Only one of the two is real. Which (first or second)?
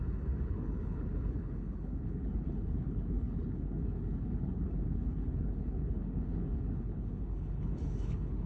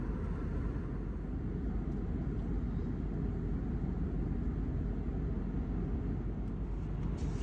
second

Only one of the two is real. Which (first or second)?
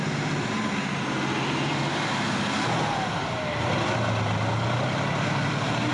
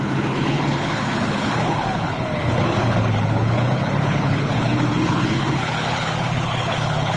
first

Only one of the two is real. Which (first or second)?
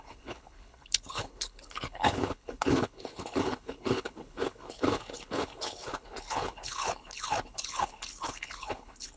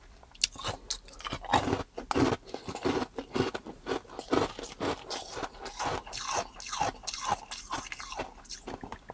second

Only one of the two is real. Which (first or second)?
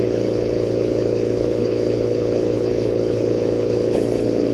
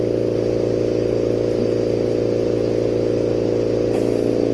second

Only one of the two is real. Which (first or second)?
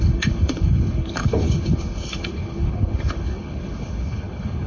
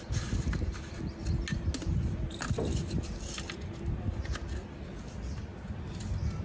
second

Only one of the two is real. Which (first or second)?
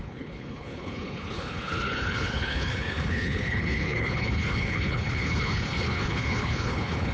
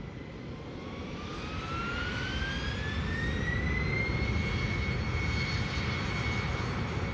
second